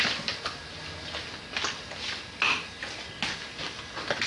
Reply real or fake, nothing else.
real